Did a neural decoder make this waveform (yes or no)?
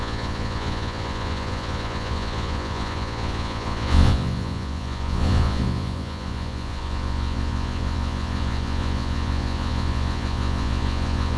yes